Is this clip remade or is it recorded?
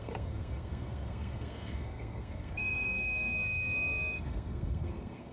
remade